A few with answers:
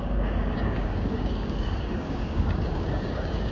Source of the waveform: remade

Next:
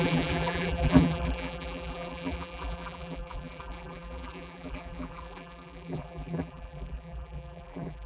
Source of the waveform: remade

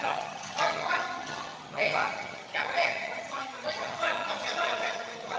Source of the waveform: remade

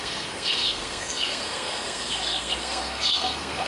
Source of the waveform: remade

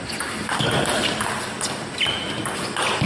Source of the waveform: recorded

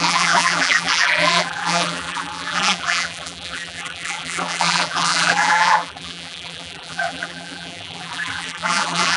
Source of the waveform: remade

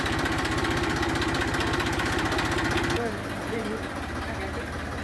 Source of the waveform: recorded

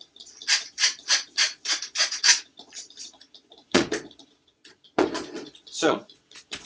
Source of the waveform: remade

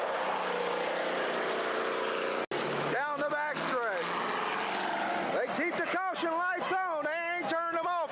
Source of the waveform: recorded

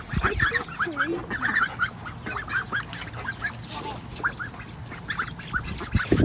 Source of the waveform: recorded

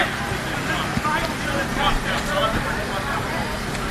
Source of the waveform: recorded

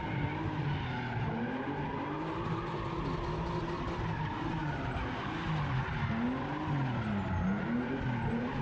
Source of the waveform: recorded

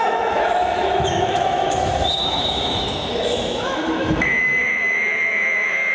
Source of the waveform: remade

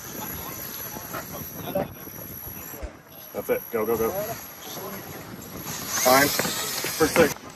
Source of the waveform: recorded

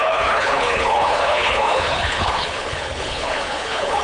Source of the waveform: remade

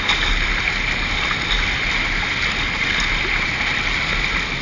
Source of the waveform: recorded